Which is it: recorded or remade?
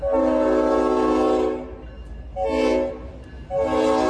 recorded